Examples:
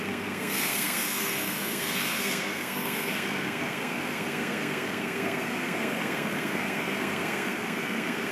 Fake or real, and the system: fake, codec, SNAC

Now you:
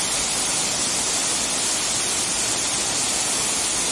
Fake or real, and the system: real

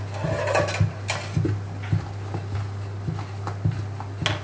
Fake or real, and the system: real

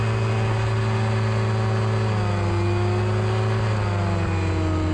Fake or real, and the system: real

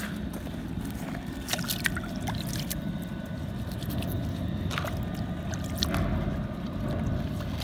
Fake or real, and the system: real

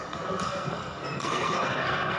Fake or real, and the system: fake, codec, SNAC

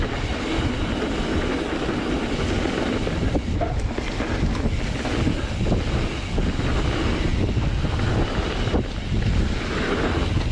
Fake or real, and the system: real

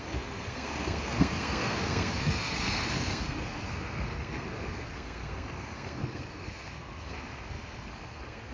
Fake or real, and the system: fake, codec, SNAC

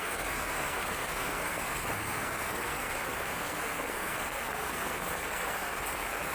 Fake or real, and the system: fake, codec, SNAC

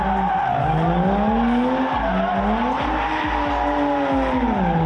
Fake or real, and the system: real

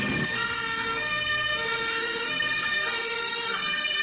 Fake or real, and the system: fake, codec, SNAC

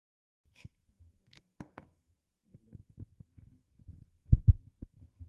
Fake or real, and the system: fake, codec, SNAC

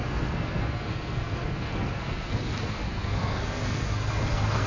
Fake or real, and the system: fake, codec, SNAC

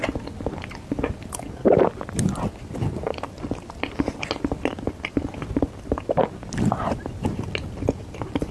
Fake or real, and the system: real